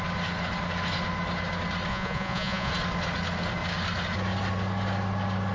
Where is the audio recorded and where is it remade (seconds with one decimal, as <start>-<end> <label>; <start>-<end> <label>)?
0.0-1.9 recorded; 1.9-2.7 remade; 2.7-5.5 recorded